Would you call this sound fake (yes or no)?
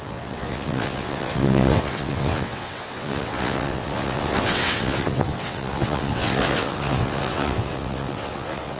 yes